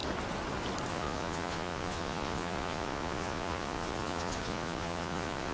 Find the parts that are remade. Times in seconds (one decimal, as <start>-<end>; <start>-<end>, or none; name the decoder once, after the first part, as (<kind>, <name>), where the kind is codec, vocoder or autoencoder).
0.9-5.5 (vocoder, Vocos)